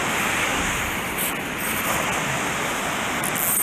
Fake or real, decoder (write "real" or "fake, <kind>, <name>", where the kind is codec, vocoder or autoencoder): real